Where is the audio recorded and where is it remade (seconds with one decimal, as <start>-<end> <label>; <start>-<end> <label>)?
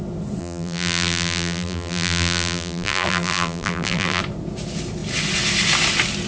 0.0-0.4 recorded; 0.4-4.2 remade; 4.2-6.3 recorded